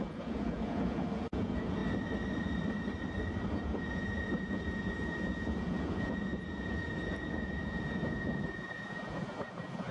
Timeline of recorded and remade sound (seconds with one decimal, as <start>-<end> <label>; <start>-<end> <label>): 0.0-1.8 remade; 1.8-3.5 recorded; 3.5-9.9 remade